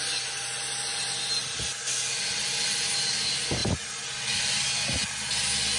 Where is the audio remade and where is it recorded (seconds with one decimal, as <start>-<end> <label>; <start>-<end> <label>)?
0.0-5.8 recorded